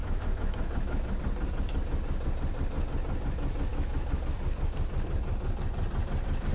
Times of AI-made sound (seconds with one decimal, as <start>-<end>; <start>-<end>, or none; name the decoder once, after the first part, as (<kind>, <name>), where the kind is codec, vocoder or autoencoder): 0.0-1.1 (autoencoder, DAC-VAE); 3.7-4.2